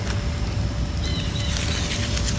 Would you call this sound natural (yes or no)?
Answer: yes